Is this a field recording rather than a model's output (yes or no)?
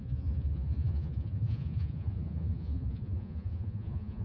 no